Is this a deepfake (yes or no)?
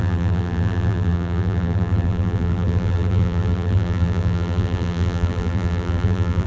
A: yes